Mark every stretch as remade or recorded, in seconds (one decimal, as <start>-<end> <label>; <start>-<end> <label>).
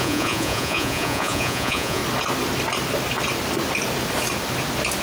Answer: 0.0-2.0 remade; 2.0-5.0 recorded